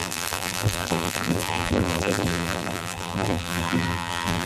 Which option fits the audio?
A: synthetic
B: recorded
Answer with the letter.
A